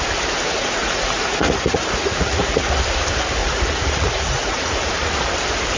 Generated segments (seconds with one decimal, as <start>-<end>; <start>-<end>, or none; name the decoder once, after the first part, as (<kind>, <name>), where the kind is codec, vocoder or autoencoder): 0.6-2.7 (vocoder, Vocos); 3.4-4.9